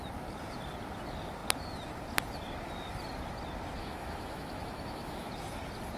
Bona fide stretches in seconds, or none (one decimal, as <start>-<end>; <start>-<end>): 0.0-3.8; 5.3-6.0

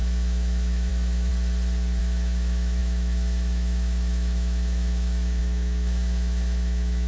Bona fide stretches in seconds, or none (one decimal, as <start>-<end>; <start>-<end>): 1.3-2.0

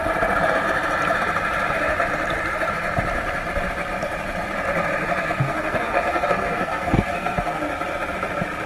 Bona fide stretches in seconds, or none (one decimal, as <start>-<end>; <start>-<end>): 0.0-5.2; 7.6-8.7

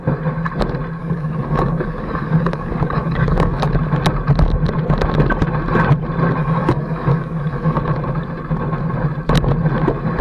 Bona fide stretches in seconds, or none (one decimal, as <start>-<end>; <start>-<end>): 0.0-1.0; 3.7-6.4; 7.8-10.2

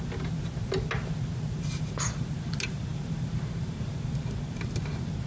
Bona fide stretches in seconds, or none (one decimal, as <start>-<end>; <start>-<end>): 0.0-5.3

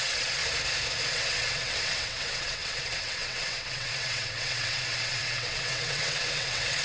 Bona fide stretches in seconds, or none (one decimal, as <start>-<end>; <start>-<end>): 0.4-1.1

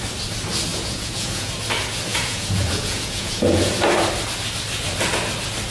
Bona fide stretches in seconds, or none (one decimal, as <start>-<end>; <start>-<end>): 0.0-0.7; 1.5-2.1; 3.7-5.7

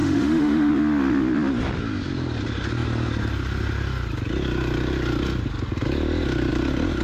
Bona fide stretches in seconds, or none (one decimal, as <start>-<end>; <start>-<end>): 0.7-7.0